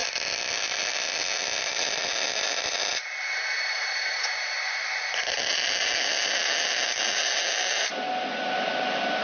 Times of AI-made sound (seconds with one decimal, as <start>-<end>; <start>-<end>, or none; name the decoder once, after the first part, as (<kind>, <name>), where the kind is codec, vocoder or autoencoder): none